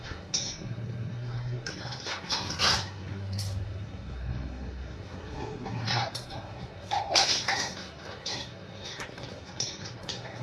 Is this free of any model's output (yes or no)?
no